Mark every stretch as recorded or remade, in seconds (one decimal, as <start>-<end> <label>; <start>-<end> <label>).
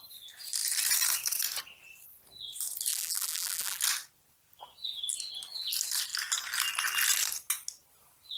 0.0-2.9 recorded; 2.9-3.8 remade; 3.8-8.4 recorded